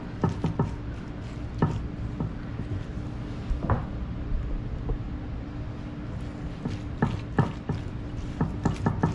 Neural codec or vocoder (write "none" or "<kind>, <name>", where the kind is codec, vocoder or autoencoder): none